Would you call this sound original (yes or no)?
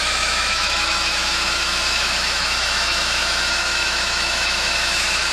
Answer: no